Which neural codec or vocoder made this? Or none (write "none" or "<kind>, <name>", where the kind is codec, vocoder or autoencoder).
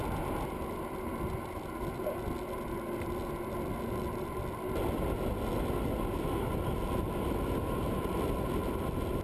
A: none